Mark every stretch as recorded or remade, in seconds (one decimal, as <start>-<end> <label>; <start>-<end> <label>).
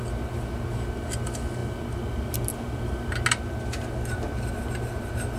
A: 0.0-5.4 recorded